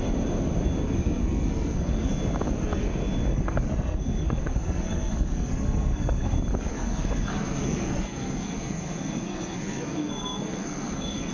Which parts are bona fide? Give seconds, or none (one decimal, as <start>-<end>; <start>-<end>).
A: 0.0-0.8; 2.1-3.3; 6.3-6.7